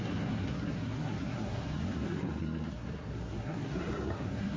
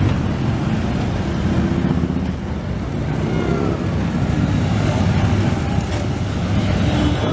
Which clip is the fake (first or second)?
first